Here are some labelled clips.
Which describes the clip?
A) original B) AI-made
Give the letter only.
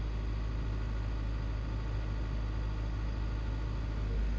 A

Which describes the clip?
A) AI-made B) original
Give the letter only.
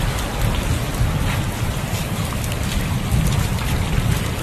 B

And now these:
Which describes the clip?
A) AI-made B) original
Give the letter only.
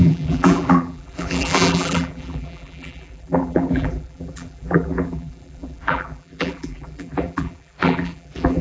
A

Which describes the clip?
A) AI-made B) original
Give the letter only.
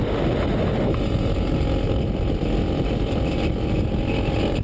B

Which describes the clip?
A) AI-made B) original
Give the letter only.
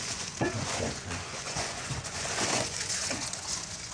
A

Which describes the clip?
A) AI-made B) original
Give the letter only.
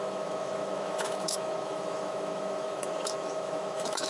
A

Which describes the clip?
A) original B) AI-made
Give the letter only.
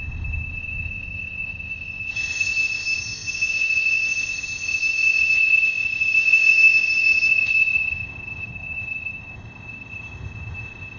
B